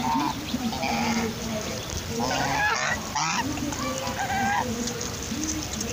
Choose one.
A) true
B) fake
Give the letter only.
A